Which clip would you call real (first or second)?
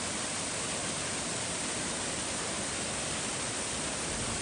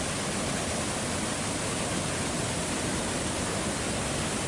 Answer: second